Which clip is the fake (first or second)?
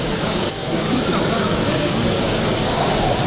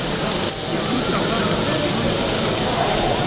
first